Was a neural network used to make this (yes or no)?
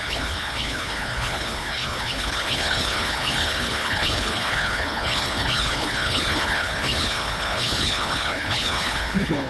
yes